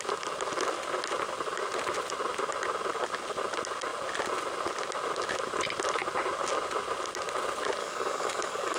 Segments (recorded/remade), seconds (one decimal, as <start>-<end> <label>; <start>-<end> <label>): 0.0-7.8 recorded; 7.8-8.8 remade